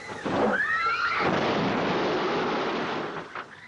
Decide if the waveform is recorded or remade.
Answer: recorded